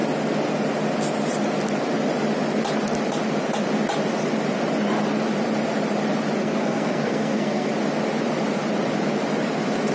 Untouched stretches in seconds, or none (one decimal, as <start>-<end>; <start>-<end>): 0.0-6.4; 7.7-9.9